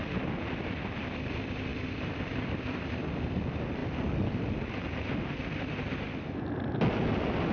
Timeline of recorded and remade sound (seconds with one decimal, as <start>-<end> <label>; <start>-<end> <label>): 0.0-1.7 recorded; 1.7-3.0 remade; 3.0-7.5 recorded